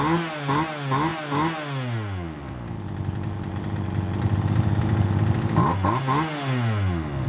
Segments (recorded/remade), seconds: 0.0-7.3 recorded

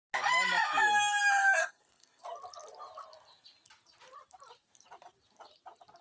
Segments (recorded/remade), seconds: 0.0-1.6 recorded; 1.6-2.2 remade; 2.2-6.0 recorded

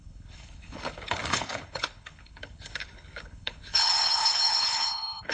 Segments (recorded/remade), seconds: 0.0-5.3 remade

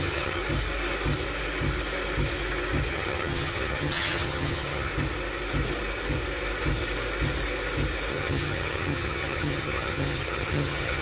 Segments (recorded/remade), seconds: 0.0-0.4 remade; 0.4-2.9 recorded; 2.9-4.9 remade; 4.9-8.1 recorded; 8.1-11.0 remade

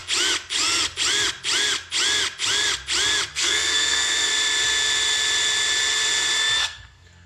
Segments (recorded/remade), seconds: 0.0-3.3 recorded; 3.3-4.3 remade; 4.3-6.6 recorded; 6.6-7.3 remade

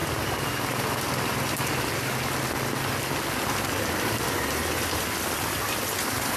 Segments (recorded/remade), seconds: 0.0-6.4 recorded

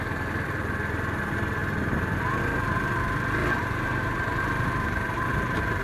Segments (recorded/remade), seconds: 0.0-3.4 recorded; 3.4-5.8 remade